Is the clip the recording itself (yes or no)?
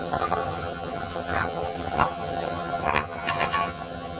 no